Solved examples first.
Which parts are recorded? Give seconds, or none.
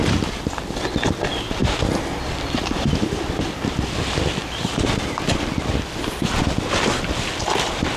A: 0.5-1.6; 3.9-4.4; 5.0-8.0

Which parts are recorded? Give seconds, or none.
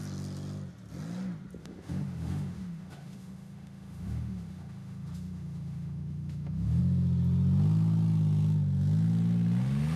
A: 0.0-1.6; 6.8-10.0